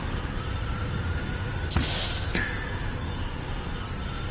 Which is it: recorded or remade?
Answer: recorded